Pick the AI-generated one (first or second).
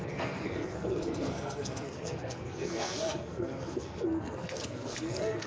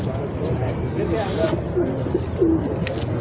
first